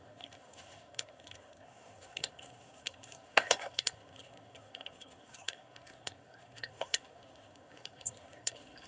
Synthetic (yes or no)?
yes